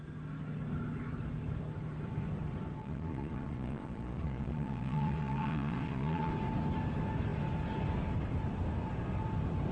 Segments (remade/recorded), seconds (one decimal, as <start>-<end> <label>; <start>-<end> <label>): 0.0-2.8 recorded; 2.8-6.3 remade; 6.3-9.7 recorded

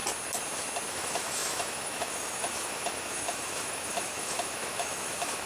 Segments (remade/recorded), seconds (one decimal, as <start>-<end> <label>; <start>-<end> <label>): 0.0-0.9 recorded; 0.9-5.5 remade

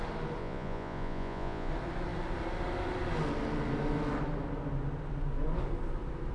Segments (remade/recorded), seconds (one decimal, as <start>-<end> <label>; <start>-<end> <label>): 0.0-0.4 recorded; 0.4-1.7 remade; 1.7-6.3 recorded

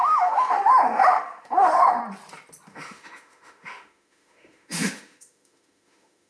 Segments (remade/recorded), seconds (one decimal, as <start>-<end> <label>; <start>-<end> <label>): 0.0-2.0 remade; 2.0-2.7 recorded; 2.7-6.3 remade